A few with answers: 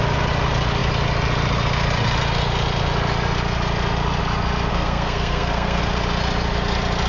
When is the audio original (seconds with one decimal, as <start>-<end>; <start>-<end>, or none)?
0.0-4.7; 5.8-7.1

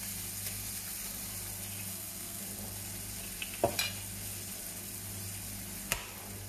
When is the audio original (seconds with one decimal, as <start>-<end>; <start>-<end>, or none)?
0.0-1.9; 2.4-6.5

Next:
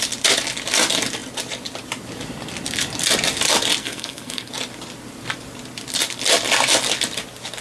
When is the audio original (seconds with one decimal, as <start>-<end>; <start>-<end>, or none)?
0.0-3.8; 4.5-7.6

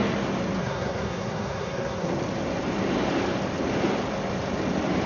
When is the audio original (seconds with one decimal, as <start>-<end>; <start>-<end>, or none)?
0.0-0.6; 2.1-5.1

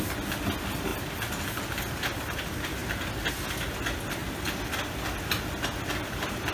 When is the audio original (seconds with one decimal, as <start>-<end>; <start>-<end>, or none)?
0.0-6.5